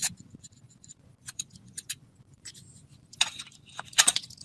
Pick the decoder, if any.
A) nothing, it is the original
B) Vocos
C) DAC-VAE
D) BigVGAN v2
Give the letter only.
B